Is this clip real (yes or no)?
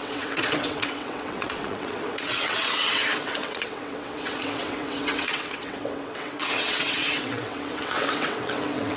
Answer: no